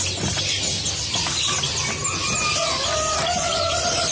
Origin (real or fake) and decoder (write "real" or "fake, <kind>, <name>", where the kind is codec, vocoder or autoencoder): real